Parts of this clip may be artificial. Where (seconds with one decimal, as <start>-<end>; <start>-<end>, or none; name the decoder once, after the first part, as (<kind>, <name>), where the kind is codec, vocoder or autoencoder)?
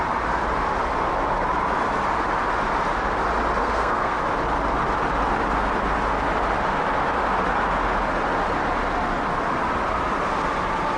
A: 3.6-4.2 (codec, SNAC)